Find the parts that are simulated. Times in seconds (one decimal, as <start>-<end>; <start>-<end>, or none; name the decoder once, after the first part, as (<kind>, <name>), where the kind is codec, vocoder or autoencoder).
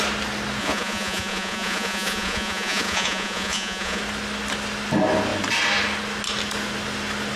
0.6-4.0 (vocoder, Vocos)